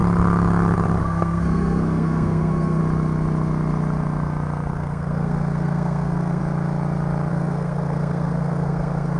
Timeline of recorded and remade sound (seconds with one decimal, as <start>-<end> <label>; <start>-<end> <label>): 0.0-1.0 recorded; 1.0-2.8 remade; 2.8-4.7 recorded; 4.7-6.4 remade; 6.4-7.3 recorded; 7.3-9.2 remade